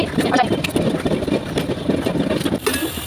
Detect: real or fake real